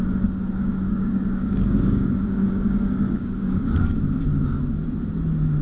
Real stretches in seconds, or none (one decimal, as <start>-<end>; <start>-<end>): 0.0-0.6; 4.0-5.6